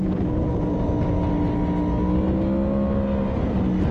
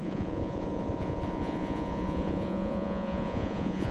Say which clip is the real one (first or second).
first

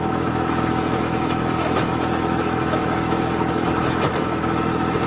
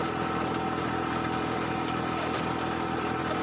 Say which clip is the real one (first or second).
second